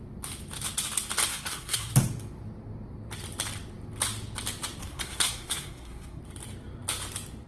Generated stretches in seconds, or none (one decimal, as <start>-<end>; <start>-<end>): 1.3-1.9; 4.8-6.2